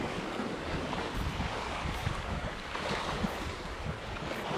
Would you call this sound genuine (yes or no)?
no